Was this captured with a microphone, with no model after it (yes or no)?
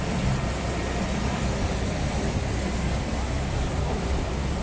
no